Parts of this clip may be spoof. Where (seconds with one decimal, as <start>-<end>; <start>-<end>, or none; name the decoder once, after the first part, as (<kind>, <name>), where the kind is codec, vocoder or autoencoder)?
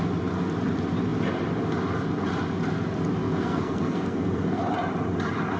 3.2-4.6 (codec, SNAC)